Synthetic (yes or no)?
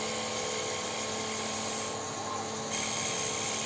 no